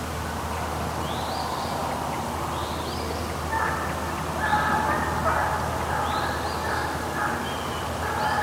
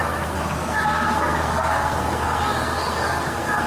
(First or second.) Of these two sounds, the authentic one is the first